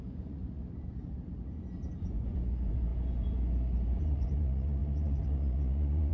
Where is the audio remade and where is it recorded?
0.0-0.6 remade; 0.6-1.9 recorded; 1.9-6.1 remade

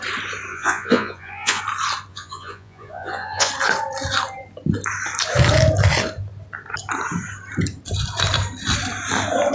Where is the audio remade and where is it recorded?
0.0-0.5 recorded; 0.5-1.6 remade; 1.6-2.1 recorded; 2.1-3.5 remade; 3.5-9.5 recorded

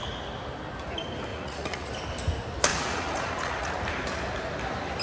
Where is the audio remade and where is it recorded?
0.0-1.3 recorded; 1.3-1.9 remade; 1.9-2.7 recorded; 2.7-3.7 remade; 3.7-5.0 recorded

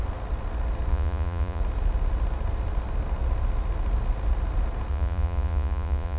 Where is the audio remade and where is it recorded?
0.0-0.9 recorded; 0.9-1.6 remade; 1.6-4.9 recorded; 4.9-6.2 remade

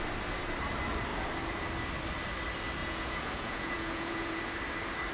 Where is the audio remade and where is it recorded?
0.0-2.8 recorded; 2.8-4.4 remade; 4.4-5.1 recorded

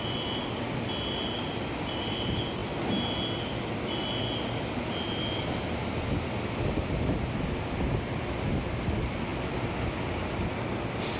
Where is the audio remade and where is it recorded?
0.0-11.2 recorded

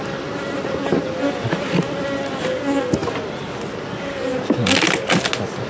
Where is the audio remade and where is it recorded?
0.0-5.7 recorded